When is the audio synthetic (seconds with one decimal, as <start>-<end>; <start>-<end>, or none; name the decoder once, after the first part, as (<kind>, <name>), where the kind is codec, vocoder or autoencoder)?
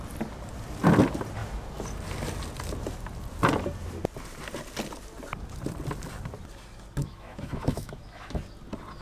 7.0-8.4 (autoencoder, DAC-VAE)